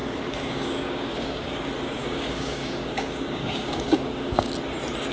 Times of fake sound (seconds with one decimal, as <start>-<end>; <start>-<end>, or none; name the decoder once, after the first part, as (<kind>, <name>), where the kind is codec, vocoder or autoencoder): 0.0-1.6 (codec, DAC); 2.0-4.5